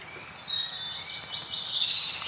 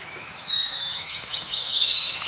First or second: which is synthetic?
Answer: second